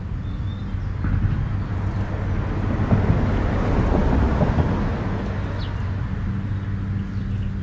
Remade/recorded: recorded